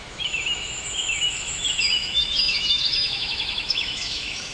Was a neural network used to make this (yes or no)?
yes